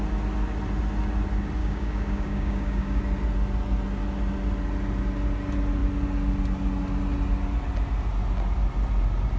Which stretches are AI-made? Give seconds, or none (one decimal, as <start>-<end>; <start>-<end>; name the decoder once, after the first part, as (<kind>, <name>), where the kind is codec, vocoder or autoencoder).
1.6-3.0 (codec, DAC)